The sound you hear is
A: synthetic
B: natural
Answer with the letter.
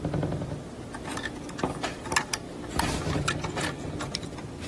B